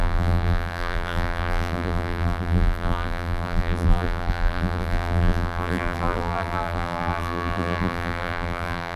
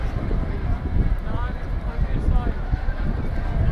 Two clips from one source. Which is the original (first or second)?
second